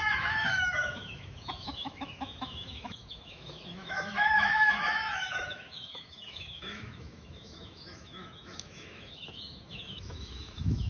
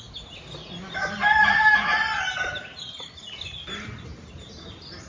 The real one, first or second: second